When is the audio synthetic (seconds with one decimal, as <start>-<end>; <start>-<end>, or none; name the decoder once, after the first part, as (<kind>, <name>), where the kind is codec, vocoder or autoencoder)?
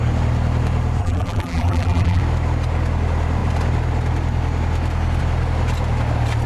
1.0-2.2 (vocoder, BigVGAN v2)